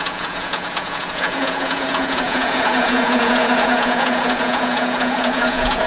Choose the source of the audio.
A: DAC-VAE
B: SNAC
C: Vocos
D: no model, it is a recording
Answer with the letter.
C